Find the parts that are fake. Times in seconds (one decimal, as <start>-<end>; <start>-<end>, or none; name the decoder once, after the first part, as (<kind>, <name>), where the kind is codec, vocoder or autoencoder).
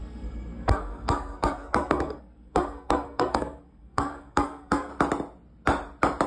0.0-4.9 (codec, SNAC)